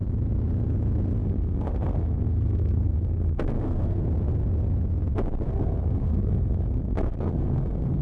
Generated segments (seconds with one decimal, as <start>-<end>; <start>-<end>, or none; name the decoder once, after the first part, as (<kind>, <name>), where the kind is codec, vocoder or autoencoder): 1.2-4.0 (codec, SNAC); 5.5-8.0